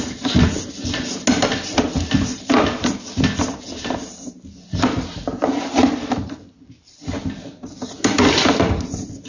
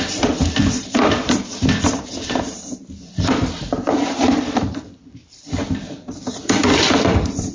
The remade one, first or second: second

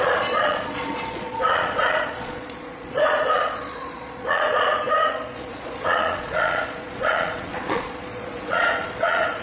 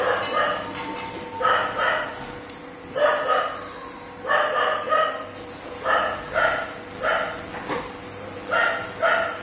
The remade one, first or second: first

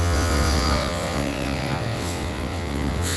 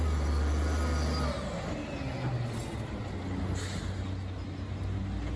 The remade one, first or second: first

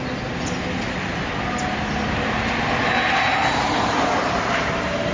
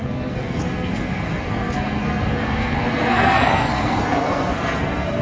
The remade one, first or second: second